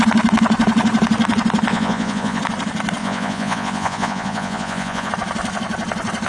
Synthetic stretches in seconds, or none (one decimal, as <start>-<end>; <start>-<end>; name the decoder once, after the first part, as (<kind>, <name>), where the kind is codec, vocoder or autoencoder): 1.7-2.4 (vocoder, Vocos); 3.0-5.1